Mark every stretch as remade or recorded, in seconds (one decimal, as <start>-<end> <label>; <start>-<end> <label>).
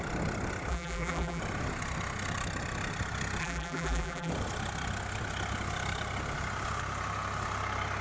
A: 0.0-0.7 recorded; 0.7-1.4 remade; 1.4-3.4 recorded; 3.4-4.3 remade; 4.3-8.0 recorded